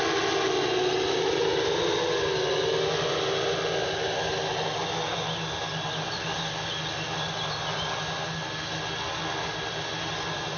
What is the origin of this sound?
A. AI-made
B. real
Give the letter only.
B